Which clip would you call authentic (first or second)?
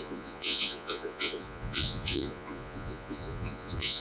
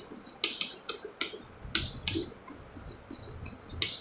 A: second